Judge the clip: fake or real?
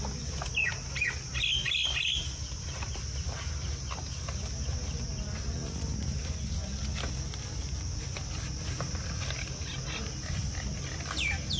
real